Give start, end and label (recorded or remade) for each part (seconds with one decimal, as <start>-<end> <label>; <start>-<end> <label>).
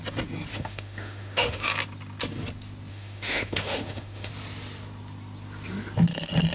0.0-0.5 recorded; 0.5-1.7 remade; 1.7-2.9 recorded; 2.9-4.3 remade; 4.3-6.5 recorded